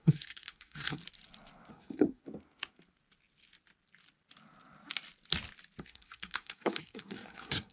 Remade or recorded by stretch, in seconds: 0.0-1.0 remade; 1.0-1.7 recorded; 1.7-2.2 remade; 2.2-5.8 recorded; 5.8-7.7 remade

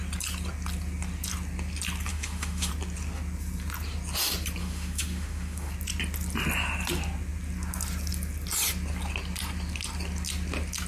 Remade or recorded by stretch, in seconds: 0.0-2.1 recorded; 2.1-2.7 remade; 2.7-4.6 recorded; 4.6-5.7 remade; 5.7-10.9 recorded

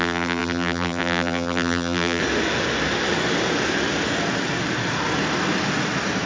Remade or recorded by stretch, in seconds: 0.0-2.2 remade; 2.2-6.3 recorded